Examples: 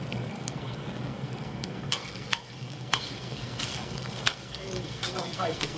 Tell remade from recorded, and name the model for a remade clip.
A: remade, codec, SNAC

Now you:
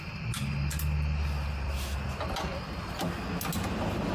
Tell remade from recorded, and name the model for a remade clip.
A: recorded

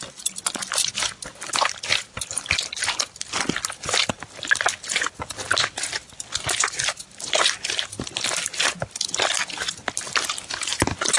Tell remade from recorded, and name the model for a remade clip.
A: recorded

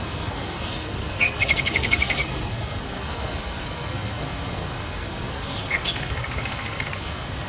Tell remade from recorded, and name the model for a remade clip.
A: remade, codec, SNAC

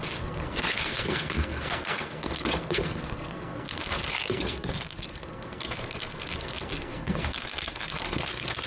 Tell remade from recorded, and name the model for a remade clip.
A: remade, codec, SNAC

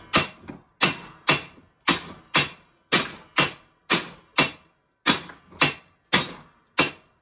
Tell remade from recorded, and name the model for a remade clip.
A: recorded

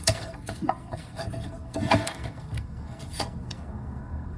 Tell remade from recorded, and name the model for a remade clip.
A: remade, codec, SNAC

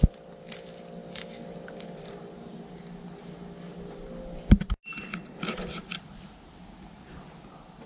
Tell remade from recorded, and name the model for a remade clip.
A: recorded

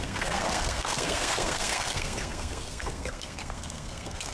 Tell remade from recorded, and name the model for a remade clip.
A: remade, codec, SNAC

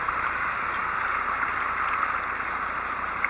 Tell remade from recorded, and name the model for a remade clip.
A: recorded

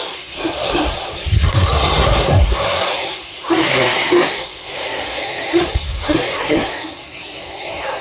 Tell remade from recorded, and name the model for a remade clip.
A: remade, codec, SNAC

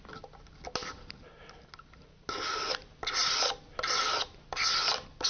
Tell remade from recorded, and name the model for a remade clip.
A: recorded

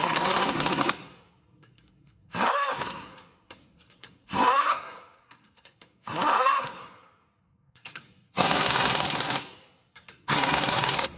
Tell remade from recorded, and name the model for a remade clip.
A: remade, codec, SNAC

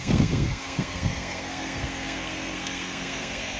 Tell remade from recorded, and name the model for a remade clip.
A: remade, codec, SNAC